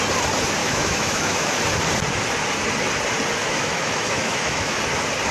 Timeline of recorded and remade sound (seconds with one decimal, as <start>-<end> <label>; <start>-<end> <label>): 0.0-0.6 recorded; 0.6-1.6 remade; 1.6-3.4 recorded; 3.4-4.8 remade; 4.8-5.3 recorded